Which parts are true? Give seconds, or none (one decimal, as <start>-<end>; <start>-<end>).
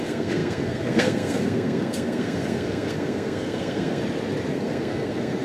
4.0-4.5